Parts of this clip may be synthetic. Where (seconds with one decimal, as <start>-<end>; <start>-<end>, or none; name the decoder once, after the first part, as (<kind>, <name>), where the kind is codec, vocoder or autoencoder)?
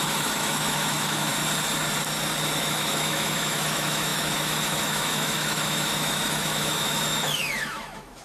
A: 0.0-1.3 (autoencoder, DAC-VAE); 2.6-8.2